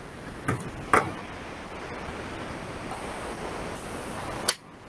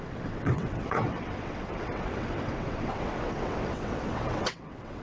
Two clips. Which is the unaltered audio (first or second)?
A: first